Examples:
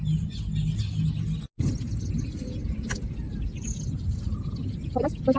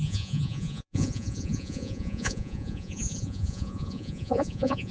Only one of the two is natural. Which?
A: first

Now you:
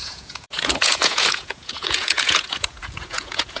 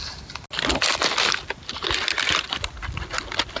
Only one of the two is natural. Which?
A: second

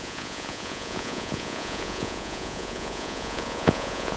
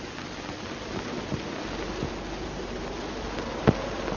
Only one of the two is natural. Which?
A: second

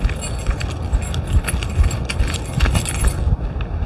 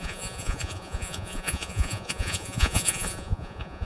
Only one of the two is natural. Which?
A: first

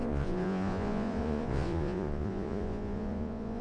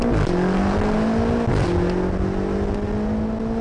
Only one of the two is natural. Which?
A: second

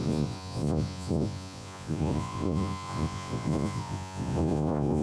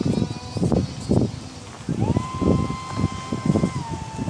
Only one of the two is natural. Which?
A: second